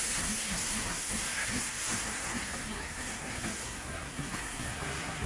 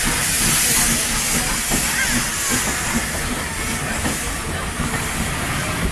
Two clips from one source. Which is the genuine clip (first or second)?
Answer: second